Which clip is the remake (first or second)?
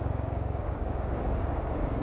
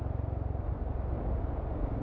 first